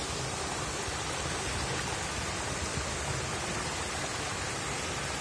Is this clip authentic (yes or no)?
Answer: yes